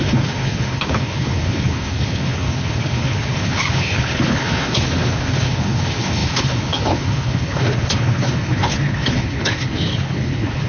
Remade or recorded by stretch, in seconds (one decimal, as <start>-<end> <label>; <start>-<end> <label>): 0.0-10.7 remade